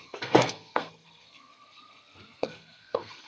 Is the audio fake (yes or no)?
yes